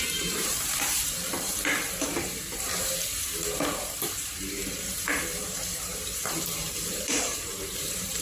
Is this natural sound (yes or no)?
no